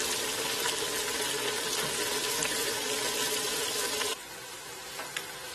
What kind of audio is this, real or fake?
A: real